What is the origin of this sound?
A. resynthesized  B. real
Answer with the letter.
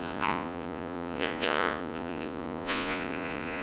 A